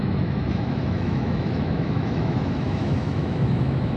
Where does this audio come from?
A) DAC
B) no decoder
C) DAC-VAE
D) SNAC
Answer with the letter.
C